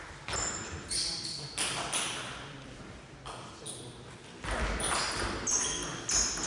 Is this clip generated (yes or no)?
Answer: no